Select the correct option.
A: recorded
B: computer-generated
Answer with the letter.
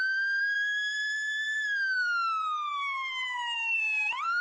B